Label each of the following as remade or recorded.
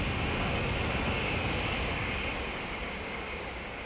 remade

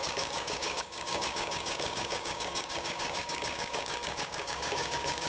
remade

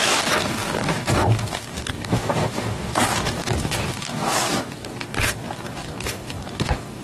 remade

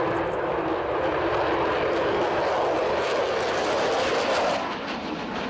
recorded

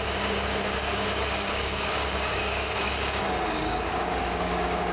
remade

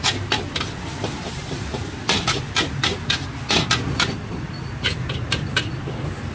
recorded